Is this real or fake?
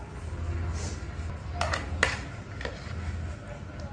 real